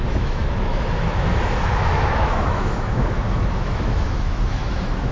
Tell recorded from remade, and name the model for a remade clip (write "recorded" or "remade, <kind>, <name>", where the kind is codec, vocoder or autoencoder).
remade, autoencoder, DAC-VAE